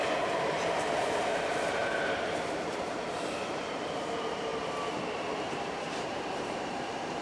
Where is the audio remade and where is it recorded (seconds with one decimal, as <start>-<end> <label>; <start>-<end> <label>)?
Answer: 0.0-1.8 remade; 1.8-2.8 recorded; 2.8-4.5 remade; 4.5-5.0 recorded; 5.0-7.2 remade